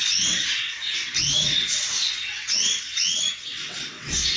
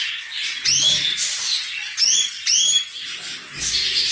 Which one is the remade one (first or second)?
first